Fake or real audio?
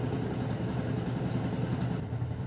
fake